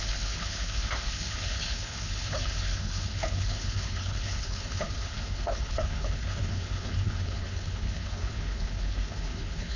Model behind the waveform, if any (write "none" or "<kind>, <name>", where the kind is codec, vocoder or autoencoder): codec, HILCodec